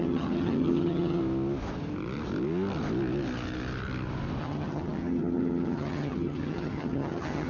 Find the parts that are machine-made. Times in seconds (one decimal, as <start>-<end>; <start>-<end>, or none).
0.0-1.2; 4.4-7.5